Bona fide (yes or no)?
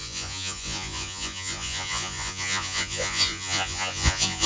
no